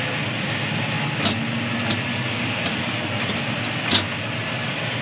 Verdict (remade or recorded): recorded